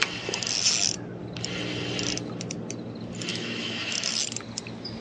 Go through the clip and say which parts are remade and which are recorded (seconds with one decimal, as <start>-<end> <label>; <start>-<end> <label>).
0.0-3.3 recorded; 3.3-4.1 remade; 4.1-5.0 recorded